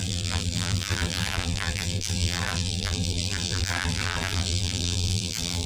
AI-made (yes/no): yes